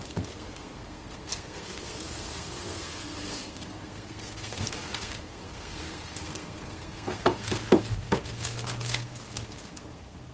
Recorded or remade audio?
remade